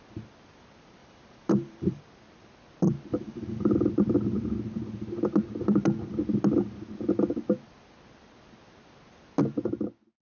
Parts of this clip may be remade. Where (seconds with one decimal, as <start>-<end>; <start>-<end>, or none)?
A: 1.0-2.0; 3.1-3.7